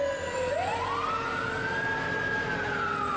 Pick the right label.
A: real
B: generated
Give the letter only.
A